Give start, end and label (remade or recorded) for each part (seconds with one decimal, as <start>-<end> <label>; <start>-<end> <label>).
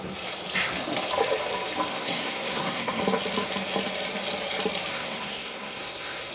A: 0.0-1.9 recorded; 1.9-3.0 remade; 3.0-4.9 recorded; 4.9-6.3 remade